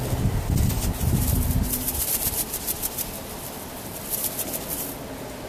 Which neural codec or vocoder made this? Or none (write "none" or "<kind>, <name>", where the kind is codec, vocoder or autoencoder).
vocoder, BigVGAN v2